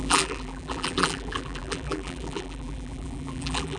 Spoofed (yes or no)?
yes